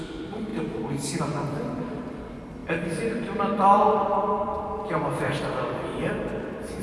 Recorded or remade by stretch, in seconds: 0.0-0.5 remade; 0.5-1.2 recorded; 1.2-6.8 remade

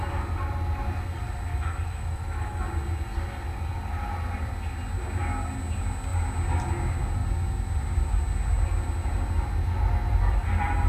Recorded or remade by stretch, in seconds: 0.0-1.5 recorded; 1.5-2.6 remade; 2.6-10.9 recorded

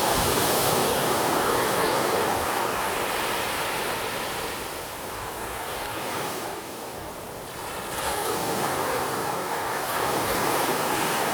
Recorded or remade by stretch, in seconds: 0.0-2.9 remade; 2.9-5.0 recorded; 5.0-7.1 remade; 7.1-8.0 recorded; 8.0-11.3 remade

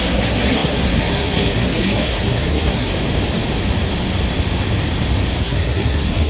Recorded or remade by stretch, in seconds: 0.0-2.9 remade; 2.9-5.4 recorded; 5.4-6.3 remade

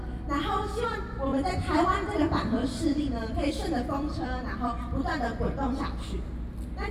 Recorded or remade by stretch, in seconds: 0.0-1.3 recorded; 1.3-5.2 remade; 5.2-6.9 recorded

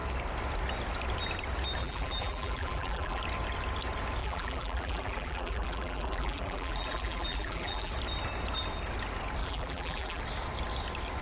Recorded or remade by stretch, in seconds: 0.0-1.8 recorded; 1.8-3.2 remade; 3.2-4.2 recorded; 4.2-7.9 remade; 7.9-9.4 recorded; 9.4-10.2 remade; 10.2-11.2 recorded

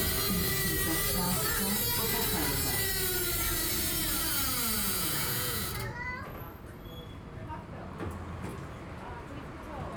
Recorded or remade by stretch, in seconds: 0.0-4.8 recorded; 4.8-5.7 remade; 5.7-10.0 recorded